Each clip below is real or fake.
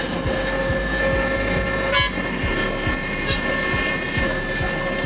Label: real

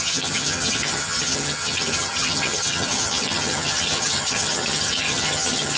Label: fake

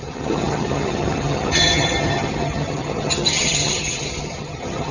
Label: fake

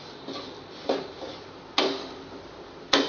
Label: real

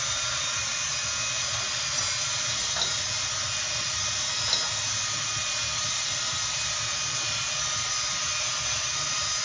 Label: real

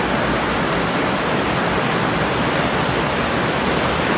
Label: real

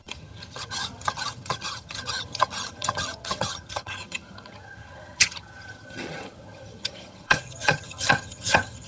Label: fake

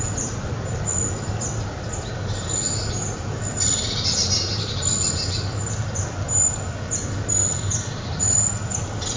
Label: real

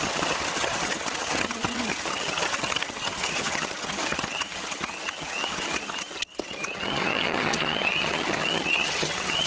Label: fake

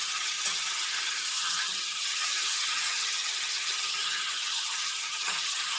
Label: fake